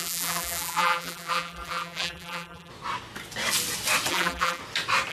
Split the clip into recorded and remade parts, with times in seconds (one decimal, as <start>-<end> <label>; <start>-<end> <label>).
0.0-2.7 remade; 2.7-4.1 recorded; 4.1-4.6 remade; 4.6-5.1 recorded